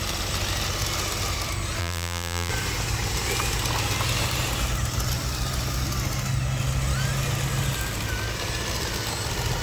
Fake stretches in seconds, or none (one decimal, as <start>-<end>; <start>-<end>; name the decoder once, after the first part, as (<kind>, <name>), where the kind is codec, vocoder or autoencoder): 1.8-2.5 (vocoder, BigVGAN v2)